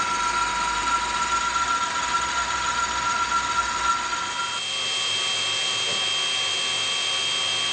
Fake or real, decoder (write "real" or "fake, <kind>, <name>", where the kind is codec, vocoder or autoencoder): real